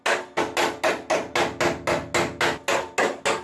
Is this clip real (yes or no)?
yes